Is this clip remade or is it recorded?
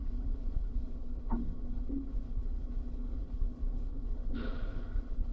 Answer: remade